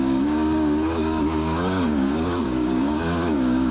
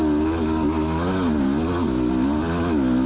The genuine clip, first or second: second